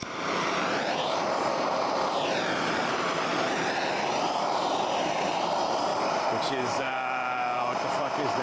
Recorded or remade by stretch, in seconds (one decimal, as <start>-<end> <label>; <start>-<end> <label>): 0.0-5.9 remade; 5.9-6.4 recorded; 6.4-8.4 remade